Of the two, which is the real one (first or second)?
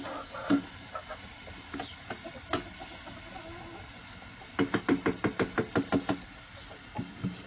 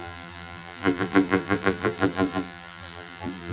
first